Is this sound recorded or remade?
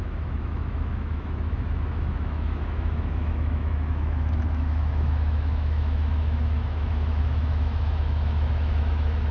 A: remade